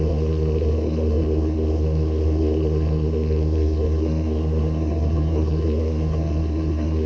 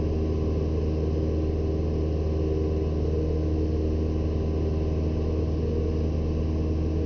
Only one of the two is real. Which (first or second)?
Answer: second